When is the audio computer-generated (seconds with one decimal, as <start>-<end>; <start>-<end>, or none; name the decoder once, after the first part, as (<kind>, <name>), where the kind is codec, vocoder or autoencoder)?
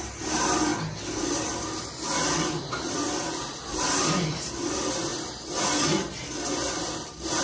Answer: 0.0-0.7 (vocoder, BigVGAN v2); 2.9-5.1; 6.5-7.4